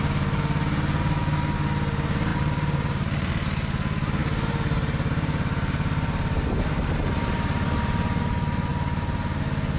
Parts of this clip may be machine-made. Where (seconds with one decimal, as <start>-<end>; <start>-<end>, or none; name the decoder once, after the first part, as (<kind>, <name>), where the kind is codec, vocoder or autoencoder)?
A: 2.3-3.3 (vocoder, BigVGAN v2); 4.2-8.2; 8.7-9.4

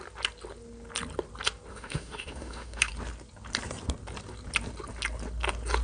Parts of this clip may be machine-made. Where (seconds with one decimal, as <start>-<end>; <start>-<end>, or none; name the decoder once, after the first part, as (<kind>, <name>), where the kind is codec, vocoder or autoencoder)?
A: 1.7-2.9 (autoencoder, DAC-VAE)

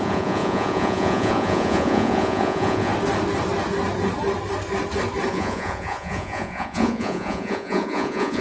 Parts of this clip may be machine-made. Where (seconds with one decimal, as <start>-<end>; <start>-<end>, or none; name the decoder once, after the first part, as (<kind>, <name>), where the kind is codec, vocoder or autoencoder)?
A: 0.0-2.9 (vocoder, Vocos); 5.3-8.4

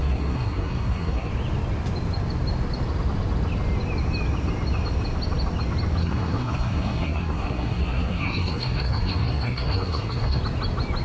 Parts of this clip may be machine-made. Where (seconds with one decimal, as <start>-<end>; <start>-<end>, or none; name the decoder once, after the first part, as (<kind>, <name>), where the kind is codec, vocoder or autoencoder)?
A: 0.0-1.3 (codec, SNAC); 6.0-10.4

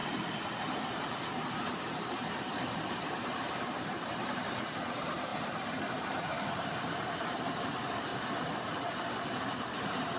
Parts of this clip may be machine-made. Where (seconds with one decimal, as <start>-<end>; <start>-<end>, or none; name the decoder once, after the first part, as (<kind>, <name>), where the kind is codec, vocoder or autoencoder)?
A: 0.0-8.1 (vocoder, BigVGAN v2); 9.7-10.2

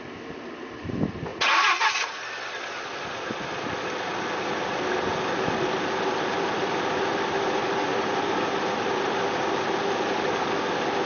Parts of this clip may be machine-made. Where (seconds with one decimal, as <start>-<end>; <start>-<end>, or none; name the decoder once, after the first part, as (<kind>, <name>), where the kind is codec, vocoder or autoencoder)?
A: 1.3-2.2 (vocoder, Vocos)

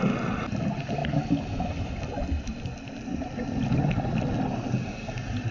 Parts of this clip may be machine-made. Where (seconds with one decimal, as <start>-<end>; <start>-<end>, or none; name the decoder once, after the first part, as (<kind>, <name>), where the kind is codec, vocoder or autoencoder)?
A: none

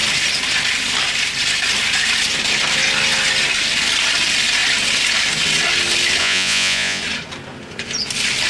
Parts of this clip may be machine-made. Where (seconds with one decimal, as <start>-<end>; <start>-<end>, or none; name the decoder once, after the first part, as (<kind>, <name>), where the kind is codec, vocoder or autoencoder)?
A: 6.2-7.0 (vocoder, Vocos)